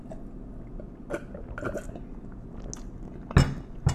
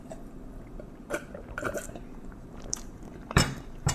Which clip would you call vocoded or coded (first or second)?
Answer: second